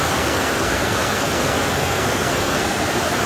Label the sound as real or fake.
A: fake